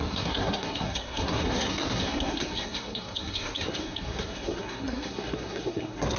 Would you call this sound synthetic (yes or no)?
yes